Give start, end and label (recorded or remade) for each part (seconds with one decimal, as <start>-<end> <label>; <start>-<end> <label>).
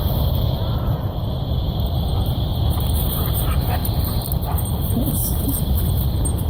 0.0-6.5 recorded